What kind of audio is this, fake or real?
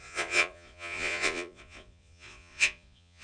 fake